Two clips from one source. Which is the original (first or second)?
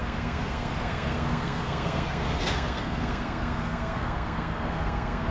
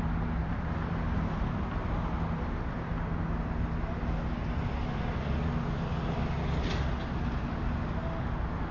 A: second